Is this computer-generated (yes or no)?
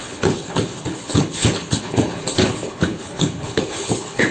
yes